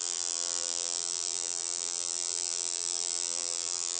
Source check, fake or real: fake